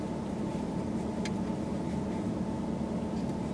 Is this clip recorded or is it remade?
recorded